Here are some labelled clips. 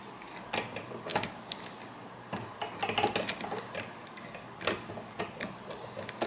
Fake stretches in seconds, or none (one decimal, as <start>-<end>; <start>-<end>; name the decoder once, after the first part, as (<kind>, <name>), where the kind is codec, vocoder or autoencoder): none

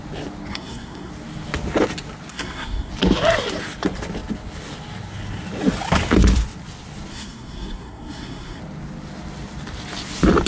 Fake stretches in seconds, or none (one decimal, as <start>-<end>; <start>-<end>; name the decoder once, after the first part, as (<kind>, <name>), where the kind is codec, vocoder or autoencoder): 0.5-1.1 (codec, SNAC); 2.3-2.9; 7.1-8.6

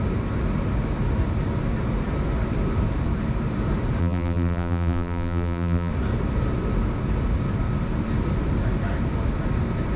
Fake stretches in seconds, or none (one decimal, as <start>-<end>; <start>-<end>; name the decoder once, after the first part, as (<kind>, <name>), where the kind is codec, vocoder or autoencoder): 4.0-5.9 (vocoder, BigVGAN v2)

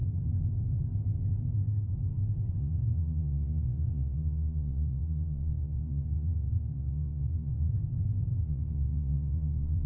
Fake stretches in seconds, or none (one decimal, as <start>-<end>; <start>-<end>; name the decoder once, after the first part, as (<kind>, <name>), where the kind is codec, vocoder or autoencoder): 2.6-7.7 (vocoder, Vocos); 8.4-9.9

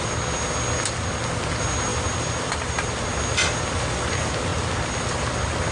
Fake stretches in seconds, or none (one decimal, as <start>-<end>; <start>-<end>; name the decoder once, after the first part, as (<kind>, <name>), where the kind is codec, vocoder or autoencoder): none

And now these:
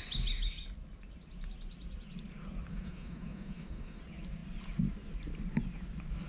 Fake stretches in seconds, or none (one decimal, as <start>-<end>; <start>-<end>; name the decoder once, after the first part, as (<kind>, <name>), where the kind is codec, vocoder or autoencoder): 2.7-4.0 (autoencoder, DAC-VAE)

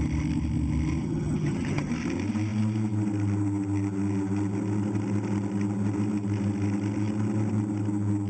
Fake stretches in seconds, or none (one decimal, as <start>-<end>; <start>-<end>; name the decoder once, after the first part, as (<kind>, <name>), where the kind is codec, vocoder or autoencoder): 1.0-1.9 (vocoder, HiFi-GAN)